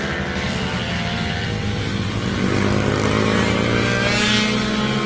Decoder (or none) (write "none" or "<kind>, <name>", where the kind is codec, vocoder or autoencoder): none